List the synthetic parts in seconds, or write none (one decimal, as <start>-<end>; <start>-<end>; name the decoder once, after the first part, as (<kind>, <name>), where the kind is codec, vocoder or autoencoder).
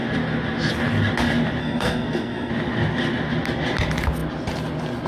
1.6-2.5 (codec, SNAC)